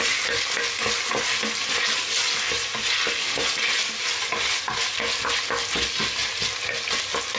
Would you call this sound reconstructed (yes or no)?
no